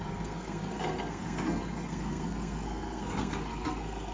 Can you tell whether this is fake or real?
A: fake